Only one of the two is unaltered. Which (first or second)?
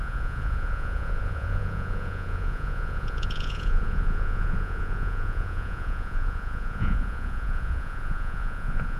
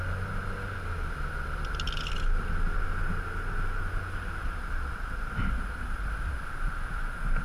second